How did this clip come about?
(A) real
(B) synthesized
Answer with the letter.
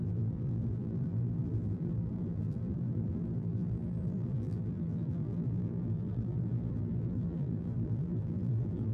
B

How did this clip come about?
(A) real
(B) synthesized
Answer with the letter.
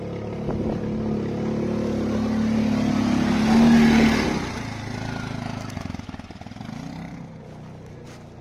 A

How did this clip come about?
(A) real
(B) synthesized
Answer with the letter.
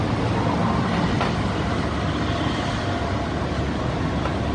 A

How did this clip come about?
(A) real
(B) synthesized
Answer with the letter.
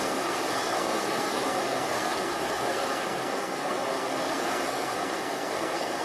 B